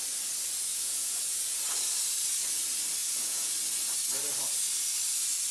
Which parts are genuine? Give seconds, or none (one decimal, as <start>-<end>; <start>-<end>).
0.0-0.7; 1.2-3.0; 3.5-5.5

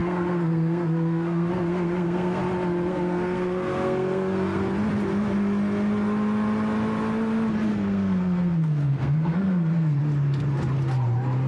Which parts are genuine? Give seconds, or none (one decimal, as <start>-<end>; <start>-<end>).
2.4-2.9; 4.6-7.7; 10.0-11.5